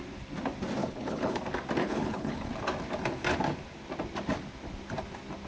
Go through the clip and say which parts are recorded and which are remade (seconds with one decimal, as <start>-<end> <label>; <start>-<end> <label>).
0.0-0.8 recorded; 0.8-1.4 remade; 1.4-1.8 recorded; 1.8-2.5 remade; 2.5-5.5 recorded